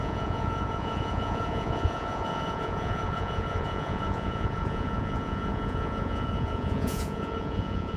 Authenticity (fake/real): fake